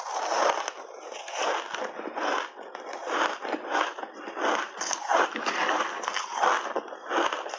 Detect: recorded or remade recorded